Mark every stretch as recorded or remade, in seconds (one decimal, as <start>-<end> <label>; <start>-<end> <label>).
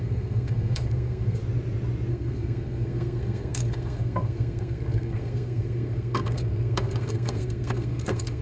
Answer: 0.0-1.4 remade; 1.4-2.1 recorded; 2.1-8.4 remade